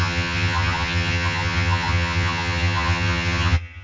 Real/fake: fake